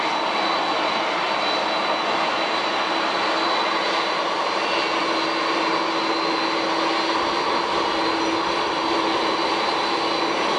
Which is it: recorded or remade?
recorded